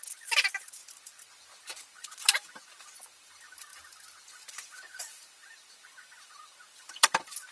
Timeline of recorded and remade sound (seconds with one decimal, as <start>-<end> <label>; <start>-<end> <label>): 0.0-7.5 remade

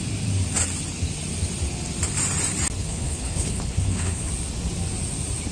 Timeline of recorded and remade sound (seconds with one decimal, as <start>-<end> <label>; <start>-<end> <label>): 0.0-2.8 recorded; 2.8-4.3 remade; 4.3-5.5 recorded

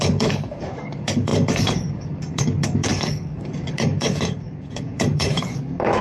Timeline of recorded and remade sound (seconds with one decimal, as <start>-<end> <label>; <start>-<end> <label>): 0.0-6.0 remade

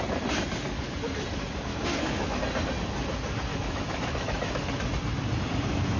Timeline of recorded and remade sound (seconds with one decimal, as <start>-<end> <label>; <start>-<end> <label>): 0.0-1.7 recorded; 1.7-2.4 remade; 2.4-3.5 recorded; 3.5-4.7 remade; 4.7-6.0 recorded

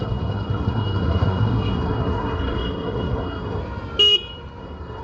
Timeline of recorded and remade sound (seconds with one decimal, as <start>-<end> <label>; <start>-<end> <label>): 0.0-3.6 remade; 3.6-4.6 recorded; 4.6-5.0 remade

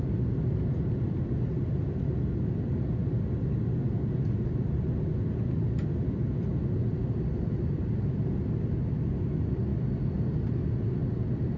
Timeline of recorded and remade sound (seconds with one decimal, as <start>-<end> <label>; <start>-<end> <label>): 0.0-11.6 recorded